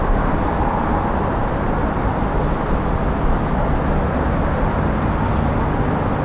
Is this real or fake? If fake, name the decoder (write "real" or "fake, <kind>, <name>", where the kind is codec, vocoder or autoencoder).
real